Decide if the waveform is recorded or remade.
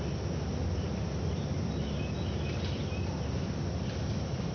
recorded